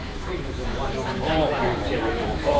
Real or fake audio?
fake